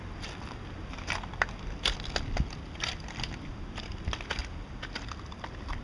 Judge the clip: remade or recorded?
recorded